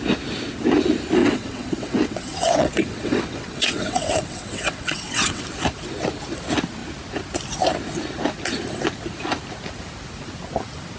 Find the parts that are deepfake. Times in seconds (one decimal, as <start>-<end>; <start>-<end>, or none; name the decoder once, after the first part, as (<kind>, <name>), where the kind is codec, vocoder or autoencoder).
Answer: 1.2-5.4 (vocoder, WaveNeXt)